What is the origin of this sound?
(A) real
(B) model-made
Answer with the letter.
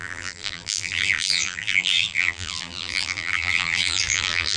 B